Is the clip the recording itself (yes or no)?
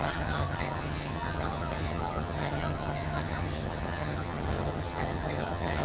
no